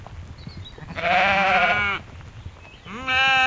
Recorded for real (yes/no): yes